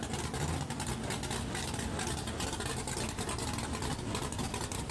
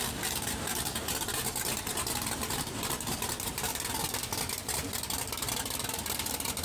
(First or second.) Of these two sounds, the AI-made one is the second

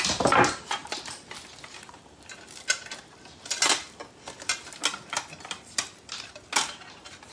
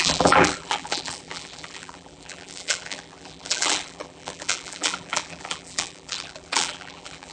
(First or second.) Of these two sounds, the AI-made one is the second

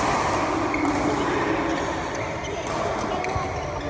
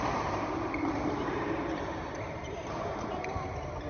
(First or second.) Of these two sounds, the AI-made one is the second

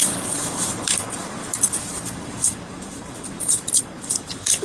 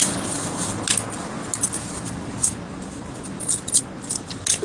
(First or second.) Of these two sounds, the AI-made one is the first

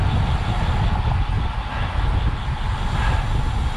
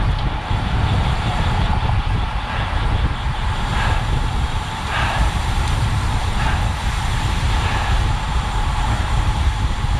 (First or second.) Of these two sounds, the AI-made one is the second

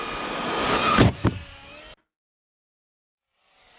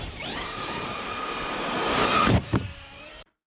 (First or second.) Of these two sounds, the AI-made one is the second